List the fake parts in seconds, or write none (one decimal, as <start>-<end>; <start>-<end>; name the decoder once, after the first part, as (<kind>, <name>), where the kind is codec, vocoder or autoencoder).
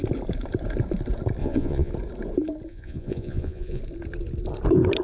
1.4-1.9 (vocoder, Vocos); 2.7-3.8